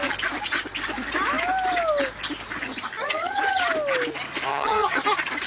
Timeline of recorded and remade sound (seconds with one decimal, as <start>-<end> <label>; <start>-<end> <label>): 0.0-3.0 recorded; 3.0-3.6 remade; 3.6-4.5 recorded; 4.5-5.0 remade; 5.0-5.5 recorded